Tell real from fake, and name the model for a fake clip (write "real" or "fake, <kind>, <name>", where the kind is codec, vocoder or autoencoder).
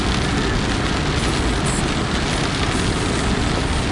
real